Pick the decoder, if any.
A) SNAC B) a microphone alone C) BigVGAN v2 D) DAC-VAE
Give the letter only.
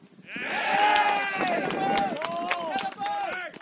B